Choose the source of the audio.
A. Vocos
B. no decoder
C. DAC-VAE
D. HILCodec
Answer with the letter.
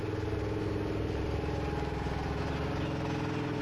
B